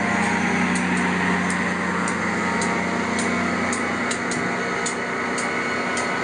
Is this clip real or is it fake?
real